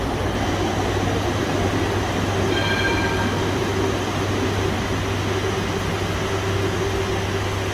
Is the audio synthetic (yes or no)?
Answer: no